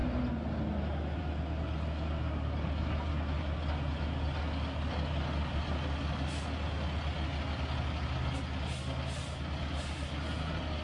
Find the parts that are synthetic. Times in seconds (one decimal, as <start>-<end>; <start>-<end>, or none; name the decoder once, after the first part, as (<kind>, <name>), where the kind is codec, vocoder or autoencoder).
none